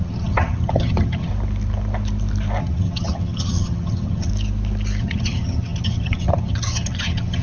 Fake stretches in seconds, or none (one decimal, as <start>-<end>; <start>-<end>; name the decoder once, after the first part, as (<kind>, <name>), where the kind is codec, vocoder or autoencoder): 0.0-1.3 (vocoder, HiFi-GAN); 2.6-4.3; 5.0-7.4